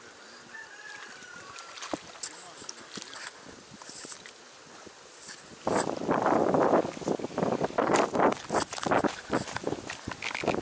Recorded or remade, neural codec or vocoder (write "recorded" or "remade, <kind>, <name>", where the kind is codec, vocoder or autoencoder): recorded